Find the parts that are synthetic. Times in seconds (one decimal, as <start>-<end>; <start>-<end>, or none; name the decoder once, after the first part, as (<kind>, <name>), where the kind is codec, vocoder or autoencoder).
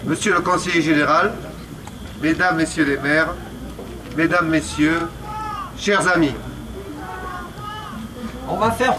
0.0-2.3 (vocoder, BigVGAN v2); 4.5-5.0; 7.7-9.0